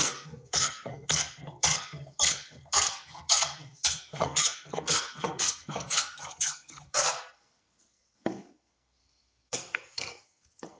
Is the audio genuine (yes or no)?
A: no